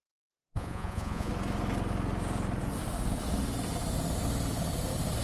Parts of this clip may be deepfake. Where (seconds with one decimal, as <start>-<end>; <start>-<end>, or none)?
0.0-1.3